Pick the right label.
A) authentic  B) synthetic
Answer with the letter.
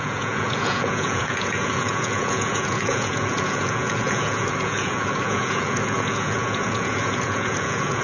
B